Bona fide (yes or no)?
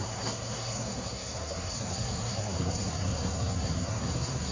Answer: no